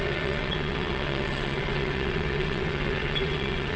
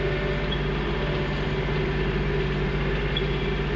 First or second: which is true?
second